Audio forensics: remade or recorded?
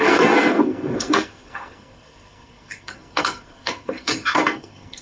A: remade